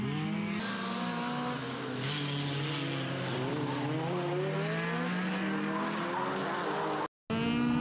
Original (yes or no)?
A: yes